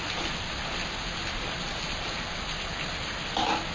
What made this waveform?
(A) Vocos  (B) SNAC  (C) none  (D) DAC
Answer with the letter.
C